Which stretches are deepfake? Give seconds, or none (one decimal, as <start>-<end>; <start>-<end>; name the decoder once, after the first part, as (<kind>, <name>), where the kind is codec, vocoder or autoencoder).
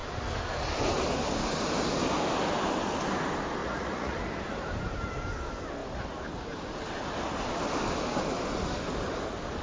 3.6-4.2 (vocoder, Vocos)